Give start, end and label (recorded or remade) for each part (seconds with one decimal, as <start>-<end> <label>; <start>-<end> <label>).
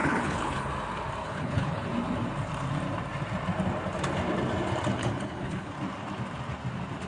0.0-0.7 remade; 0.7-1.2 recorded; 1.2-1.9 remade; 1.9-5.0 recorded; 5.0-5.7 remade; 5.7-7.1 recorded